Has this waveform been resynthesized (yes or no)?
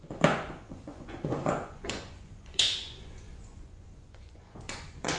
yes